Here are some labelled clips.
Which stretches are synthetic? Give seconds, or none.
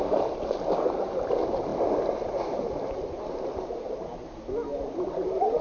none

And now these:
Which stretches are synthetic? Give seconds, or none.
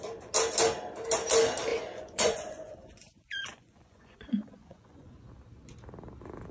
1.7-5.3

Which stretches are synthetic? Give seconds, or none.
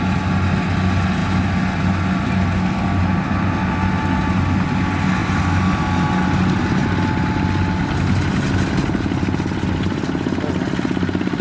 none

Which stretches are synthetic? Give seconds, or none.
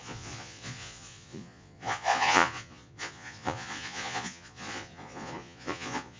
0.0-6.2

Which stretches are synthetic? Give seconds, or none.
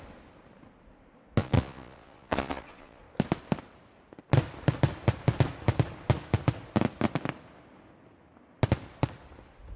1.4-3.0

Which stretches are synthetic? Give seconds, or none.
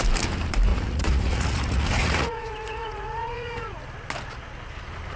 0.7-3.8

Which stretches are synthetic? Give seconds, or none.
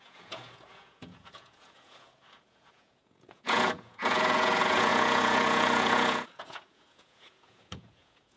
0.0-8.4